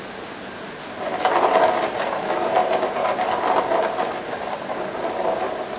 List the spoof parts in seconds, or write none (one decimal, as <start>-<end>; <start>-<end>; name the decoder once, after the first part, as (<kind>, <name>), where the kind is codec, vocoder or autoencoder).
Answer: none